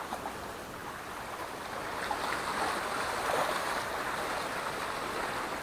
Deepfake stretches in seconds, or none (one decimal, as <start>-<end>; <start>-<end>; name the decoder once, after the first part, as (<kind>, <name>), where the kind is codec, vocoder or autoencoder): none